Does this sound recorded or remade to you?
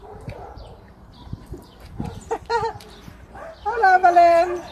remade